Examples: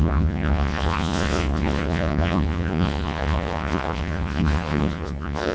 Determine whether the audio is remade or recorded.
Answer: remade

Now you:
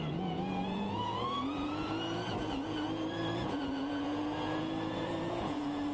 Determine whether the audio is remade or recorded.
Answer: remade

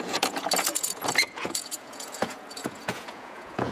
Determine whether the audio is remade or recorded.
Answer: remade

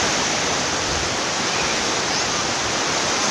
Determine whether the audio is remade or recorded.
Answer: recorded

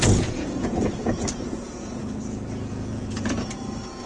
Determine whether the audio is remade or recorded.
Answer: remade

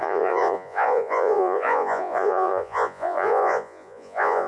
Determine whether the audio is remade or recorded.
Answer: remade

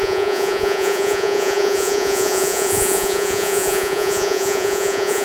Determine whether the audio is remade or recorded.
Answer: remade